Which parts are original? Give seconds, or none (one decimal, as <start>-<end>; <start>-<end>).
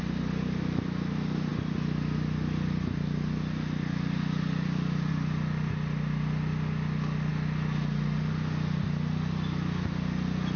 0.0-10.6